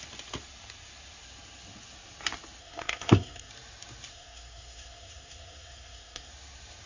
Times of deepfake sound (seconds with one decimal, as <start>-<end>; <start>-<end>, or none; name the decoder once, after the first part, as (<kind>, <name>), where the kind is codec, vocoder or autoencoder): 2.6-3.5 (codec, SNAC); 4.1-6.3